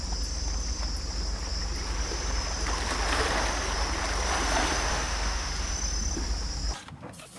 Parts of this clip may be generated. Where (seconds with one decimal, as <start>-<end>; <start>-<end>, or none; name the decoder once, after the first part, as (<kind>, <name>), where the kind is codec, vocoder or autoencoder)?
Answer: 4.9-5.5 (autoencoder, DAC-VAE)